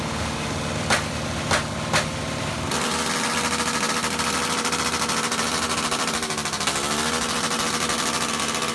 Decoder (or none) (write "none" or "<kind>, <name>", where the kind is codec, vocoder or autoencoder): none